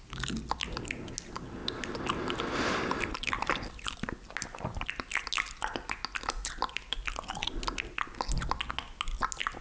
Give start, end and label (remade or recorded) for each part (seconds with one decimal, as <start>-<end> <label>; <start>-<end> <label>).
0.0-9.6 recorded